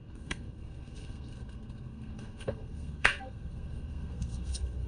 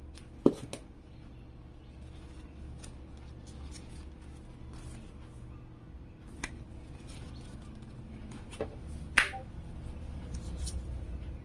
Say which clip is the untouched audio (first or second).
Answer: second